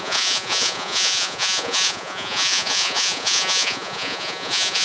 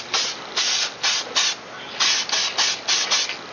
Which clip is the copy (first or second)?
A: first